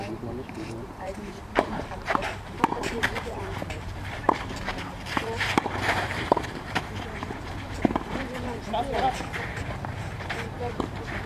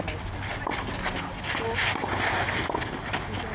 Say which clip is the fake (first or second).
first